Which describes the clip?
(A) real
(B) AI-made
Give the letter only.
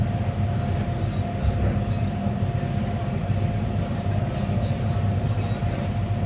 A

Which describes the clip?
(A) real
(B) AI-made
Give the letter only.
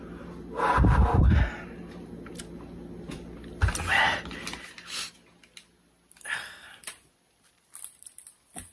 A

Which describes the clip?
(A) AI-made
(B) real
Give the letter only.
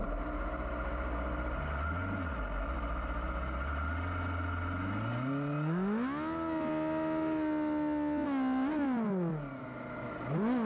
B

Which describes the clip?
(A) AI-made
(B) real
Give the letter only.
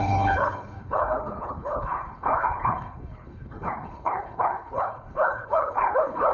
A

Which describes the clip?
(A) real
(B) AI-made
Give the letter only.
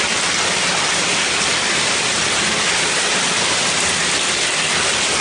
A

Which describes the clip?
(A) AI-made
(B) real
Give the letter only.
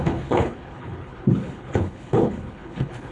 A